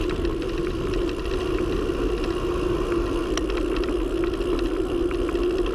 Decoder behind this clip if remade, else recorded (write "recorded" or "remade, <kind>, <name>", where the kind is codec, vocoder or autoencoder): recorded